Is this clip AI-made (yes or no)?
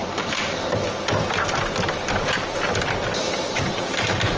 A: no